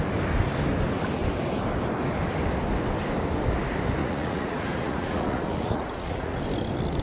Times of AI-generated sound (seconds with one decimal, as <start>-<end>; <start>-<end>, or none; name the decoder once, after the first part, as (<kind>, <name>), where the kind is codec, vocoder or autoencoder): 4.0-6.4 (vocoder, Vocos)